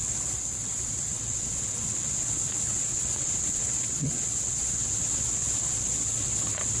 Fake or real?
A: fake